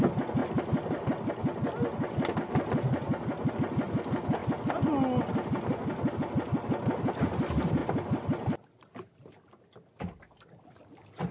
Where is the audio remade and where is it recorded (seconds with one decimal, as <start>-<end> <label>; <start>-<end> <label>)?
0.0-11.3 recorded